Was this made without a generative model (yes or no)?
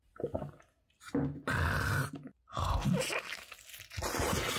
yes